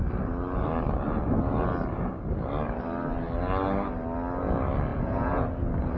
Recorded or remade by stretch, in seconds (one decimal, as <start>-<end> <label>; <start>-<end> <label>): 0.0-4.9 recorded; 4.9-5.4 remade; 5.4-6.0 recorded